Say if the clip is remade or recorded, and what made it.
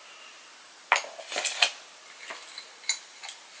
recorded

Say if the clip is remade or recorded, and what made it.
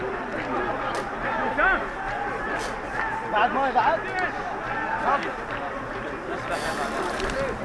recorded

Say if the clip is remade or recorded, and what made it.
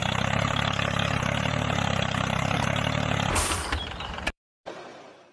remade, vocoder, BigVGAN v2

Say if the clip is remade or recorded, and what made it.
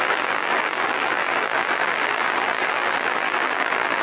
remade, vocoder, BigVGAN v2